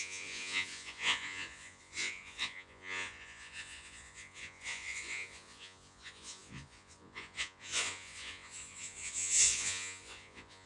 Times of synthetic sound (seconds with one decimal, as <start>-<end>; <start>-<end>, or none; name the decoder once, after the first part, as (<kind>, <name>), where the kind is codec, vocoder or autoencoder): 0.0-10.7 (vocoder, Vocos)